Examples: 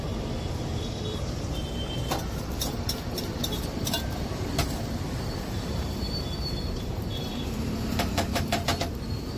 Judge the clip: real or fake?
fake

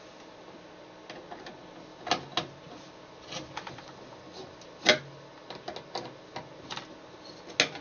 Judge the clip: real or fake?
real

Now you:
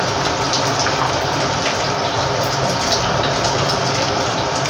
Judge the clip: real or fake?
fake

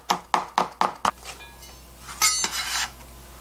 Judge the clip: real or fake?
real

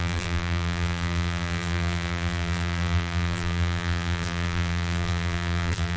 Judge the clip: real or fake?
fake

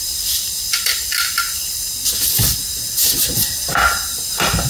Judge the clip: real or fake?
real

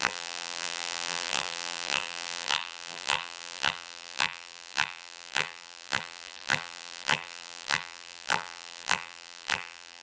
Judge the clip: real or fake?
fake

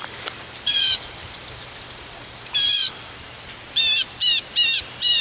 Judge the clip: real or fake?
fake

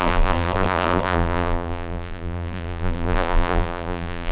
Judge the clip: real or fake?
fake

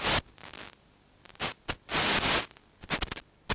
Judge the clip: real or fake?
real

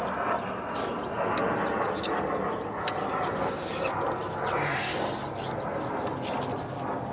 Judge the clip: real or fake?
real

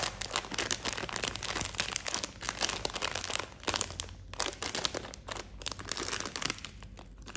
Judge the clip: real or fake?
real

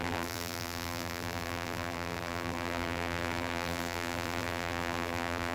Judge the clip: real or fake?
fake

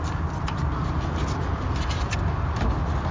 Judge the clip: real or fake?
real